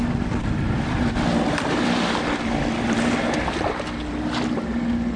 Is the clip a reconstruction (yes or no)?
no